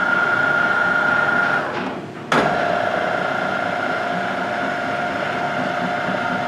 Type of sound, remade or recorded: recorded